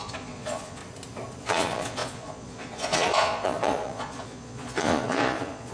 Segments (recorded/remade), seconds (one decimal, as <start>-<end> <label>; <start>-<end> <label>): 0.0-0.8 remade; 0.8-1.4 recorded; 1.4-5.7 remade